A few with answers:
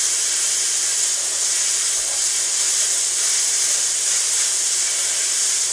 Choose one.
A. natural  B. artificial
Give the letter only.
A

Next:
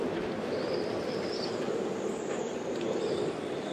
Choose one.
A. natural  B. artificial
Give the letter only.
A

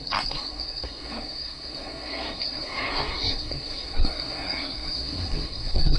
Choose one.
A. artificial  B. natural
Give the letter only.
A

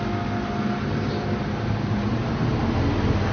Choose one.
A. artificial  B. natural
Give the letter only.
B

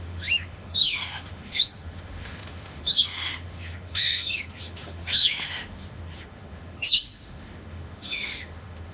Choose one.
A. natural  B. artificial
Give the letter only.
B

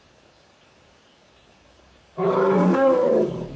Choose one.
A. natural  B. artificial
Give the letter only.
B